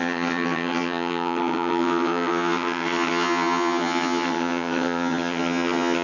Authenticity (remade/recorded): remade